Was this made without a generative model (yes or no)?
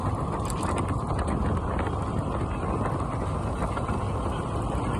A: yes